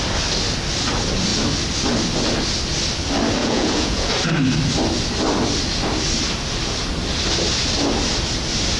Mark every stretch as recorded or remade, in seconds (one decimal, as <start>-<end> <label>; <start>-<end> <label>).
0.0-3.4 recorded; 3.4-4.1 remade; 4.1-8.8 recorded